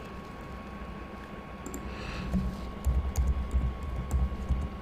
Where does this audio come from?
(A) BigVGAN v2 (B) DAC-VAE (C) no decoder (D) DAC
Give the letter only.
C